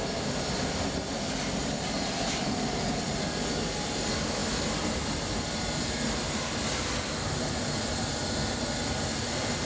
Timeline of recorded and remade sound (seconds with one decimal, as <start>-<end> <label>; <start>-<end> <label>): 0.0-9.7 recorded

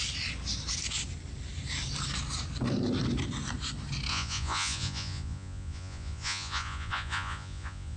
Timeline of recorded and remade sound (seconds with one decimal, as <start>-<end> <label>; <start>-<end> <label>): 0.0-4.1 recorded; 4.1-8.0 remade

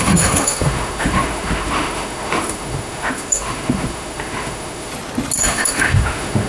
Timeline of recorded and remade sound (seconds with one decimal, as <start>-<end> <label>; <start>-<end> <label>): 0.0-4.9 remade; 4.9-5.4 recorded; 5.4-6.5 remade

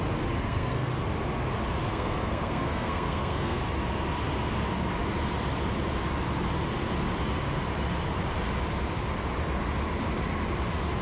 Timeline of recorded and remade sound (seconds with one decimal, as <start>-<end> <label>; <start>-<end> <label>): 0.0-0.4 recorded; 0.4-0.9 remade; 0.9-1.9 recorded; 1.9-3.6 remade; 3.6-11.0 recorded